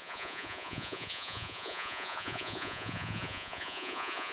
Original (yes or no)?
no